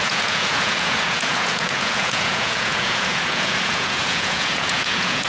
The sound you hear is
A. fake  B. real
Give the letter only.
A